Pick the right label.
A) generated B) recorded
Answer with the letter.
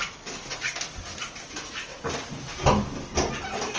B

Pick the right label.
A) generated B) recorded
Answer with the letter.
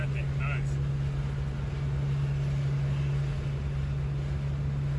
B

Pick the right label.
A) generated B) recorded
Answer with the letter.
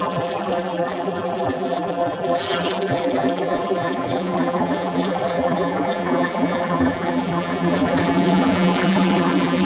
A